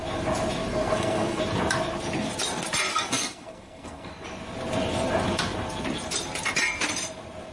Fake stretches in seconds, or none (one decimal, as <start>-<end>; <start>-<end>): 0.7-1.4; 2.9-4.1